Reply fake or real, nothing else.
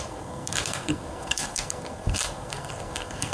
fake